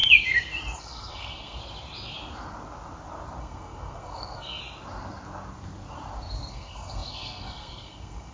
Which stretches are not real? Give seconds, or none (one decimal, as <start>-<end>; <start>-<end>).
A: 0.8-1.6; 3.4-4.6; 6.5-8.3